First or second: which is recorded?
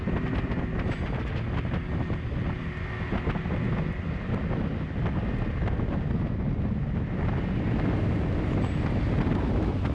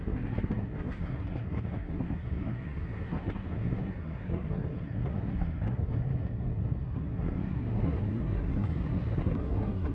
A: first